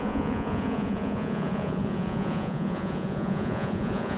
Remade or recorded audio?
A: remade